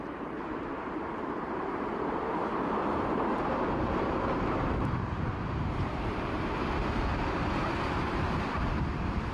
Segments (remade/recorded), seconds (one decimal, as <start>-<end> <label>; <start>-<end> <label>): 0.0-9.3 remade